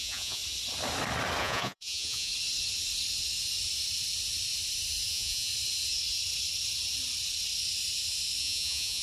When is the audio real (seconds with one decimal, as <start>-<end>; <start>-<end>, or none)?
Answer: 0.4-1.4; 2.3-5.1; 5.5-8.4